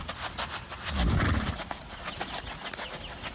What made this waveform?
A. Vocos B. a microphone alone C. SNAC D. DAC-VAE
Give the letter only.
B